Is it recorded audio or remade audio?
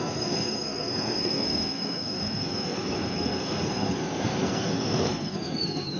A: remade